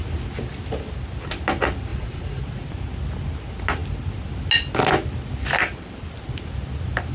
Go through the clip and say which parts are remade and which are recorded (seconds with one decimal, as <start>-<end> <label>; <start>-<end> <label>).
0.0-1.9 recorded; 1.9-2.4 remade; 2.4-7.1 recorded